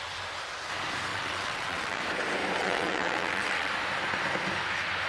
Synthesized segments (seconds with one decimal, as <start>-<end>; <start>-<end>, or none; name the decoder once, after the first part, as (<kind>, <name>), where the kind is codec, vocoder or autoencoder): 1.1-2.0 (vocoder, WaveNeXt); 2.6-3.7